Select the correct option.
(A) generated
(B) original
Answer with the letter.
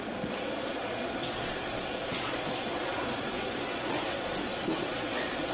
A